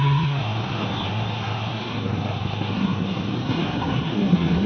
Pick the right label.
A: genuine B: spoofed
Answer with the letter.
B